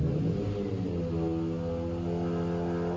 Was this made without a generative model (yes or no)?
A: yes